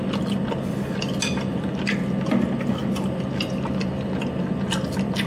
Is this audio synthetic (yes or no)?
no